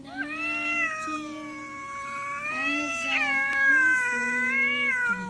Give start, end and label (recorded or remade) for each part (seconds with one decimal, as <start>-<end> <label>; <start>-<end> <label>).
0.0-1.8 recorded; 1.8-2.5 remade; 2.5-5.3 recorded